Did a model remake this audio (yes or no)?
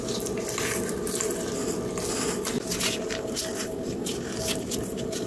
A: no